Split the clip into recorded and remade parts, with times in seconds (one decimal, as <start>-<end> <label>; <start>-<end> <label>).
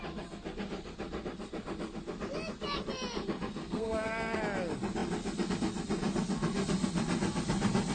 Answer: 0.0-3.6 recorded; 3.6-4.4 remade; 4.4-7.9 recorded